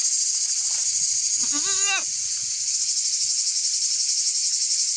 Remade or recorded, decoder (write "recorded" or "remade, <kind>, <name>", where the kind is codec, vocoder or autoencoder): recorded